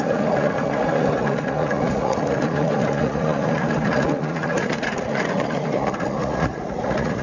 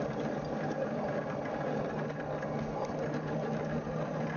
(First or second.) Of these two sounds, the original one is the second